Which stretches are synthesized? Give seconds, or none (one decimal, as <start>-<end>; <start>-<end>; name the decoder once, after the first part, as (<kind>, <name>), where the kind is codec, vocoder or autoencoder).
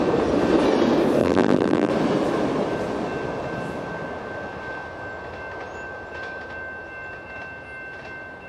1.2-1.9 (vocoder, BigVGAN v2)